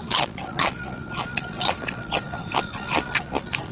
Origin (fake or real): fake